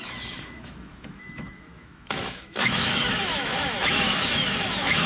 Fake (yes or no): yes